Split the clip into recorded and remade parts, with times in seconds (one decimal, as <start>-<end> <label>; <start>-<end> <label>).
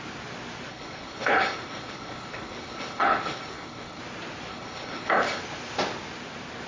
0.0-0.7 recorded; 0.7-4.0 remade; 4.0-4.5 recorded; 4.5-5.4 remade; 5.4-6.7 recorded